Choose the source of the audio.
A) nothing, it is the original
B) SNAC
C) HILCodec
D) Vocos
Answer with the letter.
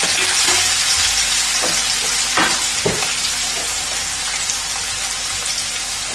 A